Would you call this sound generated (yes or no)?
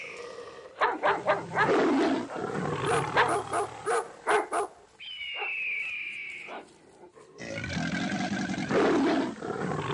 no